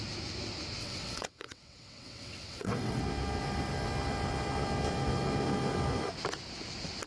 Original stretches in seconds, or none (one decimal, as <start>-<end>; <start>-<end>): 0.0-0.8; 3.0-7.1